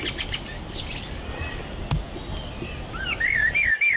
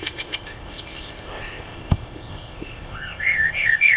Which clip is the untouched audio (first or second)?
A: first